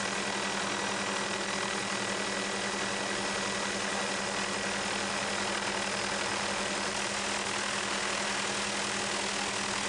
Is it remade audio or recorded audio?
recorded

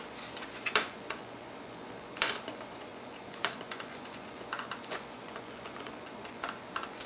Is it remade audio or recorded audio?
remade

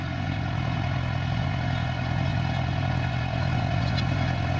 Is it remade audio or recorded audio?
remade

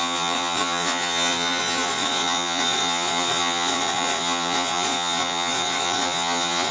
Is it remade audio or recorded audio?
remade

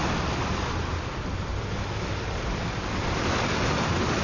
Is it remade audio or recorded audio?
recorded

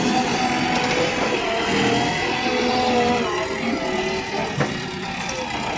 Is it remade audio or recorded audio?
recorded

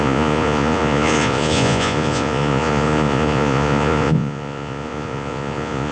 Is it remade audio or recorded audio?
remade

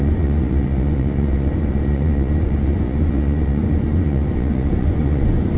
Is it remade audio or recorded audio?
remade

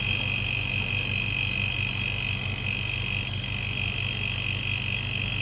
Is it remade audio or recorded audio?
recorded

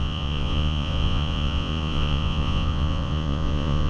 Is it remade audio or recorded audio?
remade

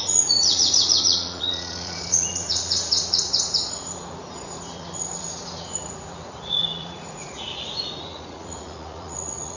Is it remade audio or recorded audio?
remade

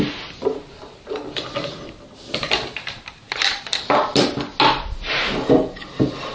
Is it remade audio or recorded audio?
recorded